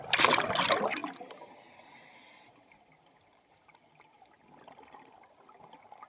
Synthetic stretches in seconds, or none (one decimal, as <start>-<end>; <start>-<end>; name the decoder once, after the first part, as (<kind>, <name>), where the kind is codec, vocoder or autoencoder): none